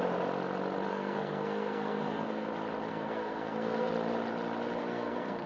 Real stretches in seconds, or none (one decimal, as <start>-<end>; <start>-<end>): 0.0-0.9; 2.5-2.9; 3.9-4.8